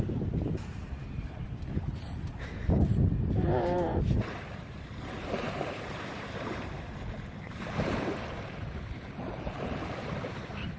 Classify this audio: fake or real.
fake